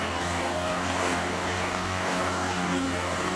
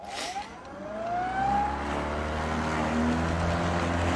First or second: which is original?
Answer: second